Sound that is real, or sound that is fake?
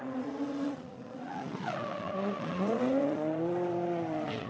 fake